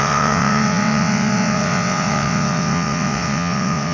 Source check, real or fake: fake